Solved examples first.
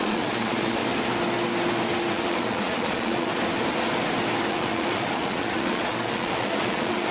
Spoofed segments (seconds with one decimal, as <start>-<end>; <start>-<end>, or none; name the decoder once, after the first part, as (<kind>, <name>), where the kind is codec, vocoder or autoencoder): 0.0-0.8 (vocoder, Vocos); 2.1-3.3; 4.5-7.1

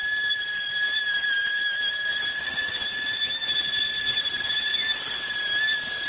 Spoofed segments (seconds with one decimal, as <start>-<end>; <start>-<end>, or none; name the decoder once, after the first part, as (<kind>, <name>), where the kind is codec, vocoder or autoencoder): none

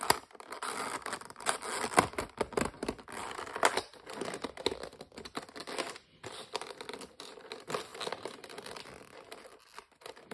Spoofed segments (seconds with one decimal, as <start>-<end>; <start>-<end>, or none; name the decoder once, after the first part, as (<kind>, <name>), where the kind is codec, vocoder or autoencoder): none